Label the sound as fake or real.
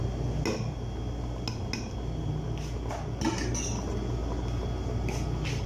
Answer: real